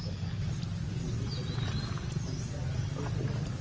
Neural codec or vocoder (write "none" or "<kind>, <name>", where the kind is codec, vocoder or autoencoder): none